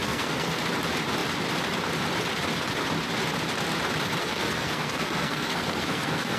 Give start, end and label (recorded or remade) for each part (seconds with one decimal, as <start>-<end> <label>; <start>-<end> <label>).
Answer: 0.0-0.6 remade; 0.6-4.2 recorded; 4.2-6.4 remade